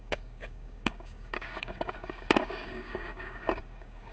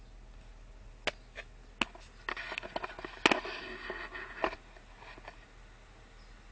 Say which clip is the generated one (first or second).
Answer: first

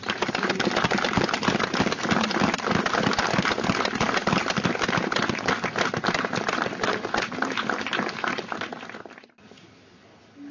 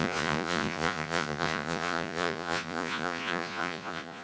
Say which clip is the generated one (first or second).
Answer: second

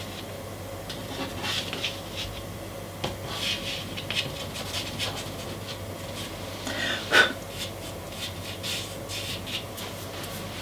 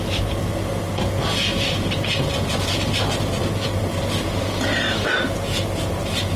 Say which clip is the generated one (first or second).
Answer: second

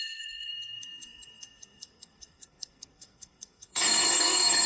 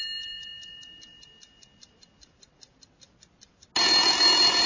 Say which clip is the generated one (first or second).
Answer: first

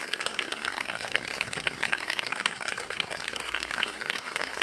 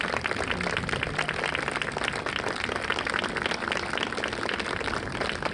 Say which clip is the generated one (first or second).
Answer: first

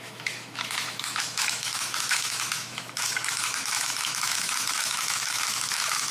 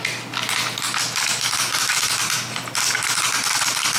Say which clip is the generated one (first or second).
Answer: first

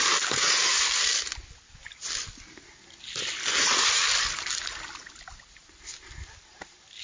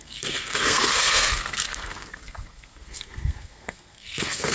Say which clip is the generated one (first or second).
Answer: second